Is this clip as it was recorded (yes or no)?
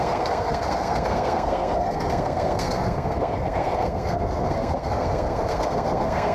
no